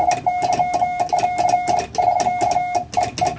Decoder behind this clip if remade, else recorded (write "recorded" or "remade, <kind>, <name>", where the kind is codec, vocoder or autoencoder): recorded